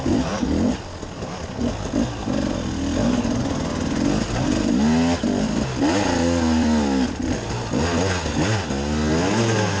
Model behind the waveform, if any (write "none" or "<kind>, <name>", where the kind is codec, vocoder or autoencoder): none